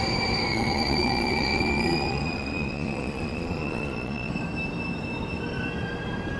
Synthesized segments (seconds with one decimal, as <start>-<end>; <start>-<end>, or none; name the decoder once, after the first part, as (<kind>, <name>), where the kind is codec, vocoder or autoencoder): 0.5-4.3 (vocoder, Vocos)